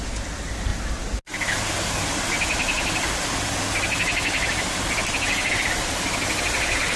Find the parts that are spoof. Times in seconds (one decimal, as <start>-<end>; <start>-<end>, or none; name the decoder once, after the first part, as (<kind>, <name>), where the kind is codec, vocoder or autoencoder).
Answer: none